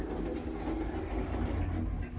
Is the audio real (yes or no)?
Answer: yes